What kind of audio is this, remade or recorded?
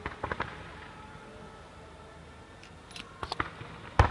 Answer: recorded